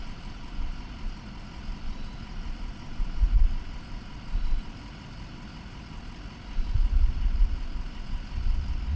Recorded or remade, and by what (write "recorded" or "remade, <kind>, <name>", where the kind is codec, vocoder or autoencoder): remade, vocoder, BigVGAN v2